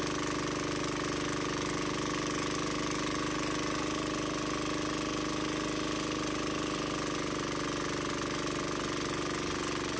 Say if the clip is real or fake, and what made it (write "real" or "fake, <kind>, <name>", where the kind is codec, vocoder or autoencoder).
real